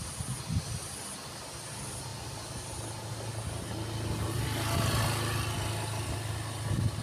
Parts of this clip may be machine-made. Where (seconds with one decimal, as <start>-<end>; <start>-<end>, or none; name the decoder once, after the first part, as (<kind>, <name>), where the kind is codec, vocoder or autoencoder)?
none